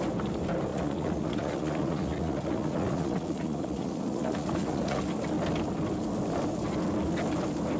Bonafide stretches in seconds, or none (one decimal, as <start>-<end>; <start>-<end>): 0.0-0.7; 5.0-7.8